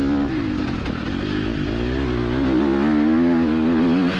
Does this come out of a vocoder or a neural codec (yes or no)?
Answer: no